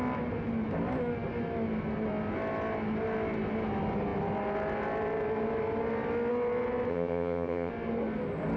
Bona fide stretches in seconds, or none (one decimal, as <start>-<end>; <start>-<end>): 0.0-6.9; 7.7-8.6